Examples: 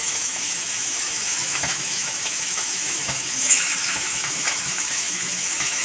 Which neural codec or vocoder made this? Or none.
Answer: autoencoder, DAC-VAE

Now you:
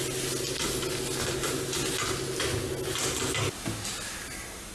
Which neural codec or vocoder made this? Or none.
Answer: none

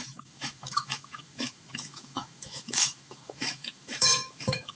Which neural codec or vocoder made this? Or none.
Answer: autoencoder, DAC-VAE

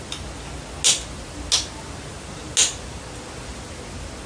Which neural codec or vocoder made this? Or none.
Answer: none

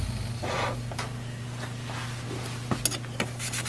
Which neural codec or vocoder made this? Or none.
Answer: none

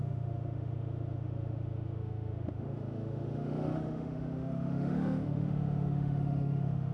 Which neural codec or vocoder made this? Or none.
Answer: autoencoder, DAC-VAE